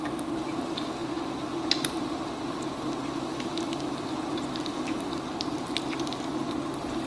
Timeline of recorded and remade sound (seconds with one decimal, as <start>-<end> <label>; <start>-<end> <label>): 0.0-7.1 recorded